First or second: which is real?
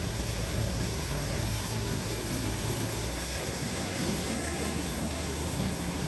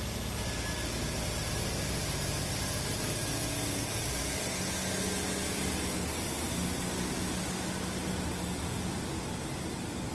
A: second